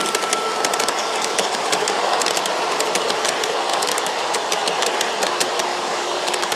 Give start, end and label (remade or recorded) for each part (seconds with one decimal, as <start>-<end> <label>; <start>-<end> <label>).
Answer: 0.0-1.0 recorded; 1.0-2.2 remade; 2.2-3.7 recorded; 3.7-4.3 remade; 4.3-5.7 recorded; 5.7-6.6 remade